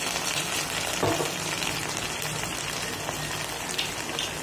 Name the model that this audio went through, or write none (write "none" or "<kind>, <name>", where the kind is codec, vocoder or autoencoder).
none